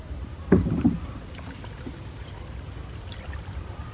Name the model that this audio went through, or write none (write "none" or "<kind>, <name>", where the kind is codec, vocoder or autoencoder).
vocoder, BigVGAN v2